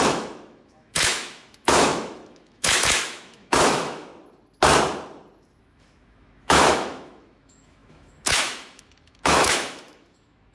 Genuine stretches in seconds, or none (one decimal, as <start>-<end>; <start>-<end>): 4.1-5.6